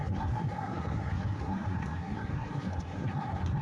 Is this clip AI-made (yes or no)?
yes